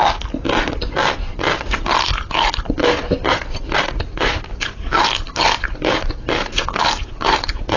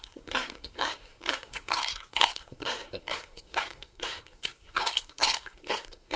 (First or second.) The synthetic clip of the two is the second